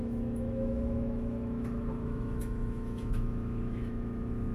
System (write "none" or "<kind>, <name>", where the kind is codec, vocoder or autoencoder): autoencoder, DAC-VAE